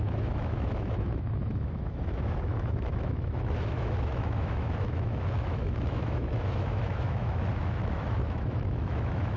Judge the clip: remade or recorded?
remade